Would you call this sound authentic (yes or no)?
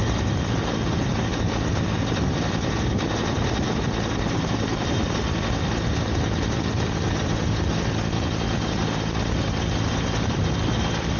yes